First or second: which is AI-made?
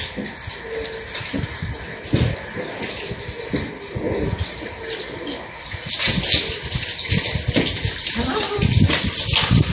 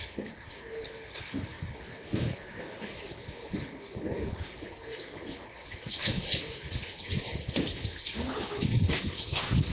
second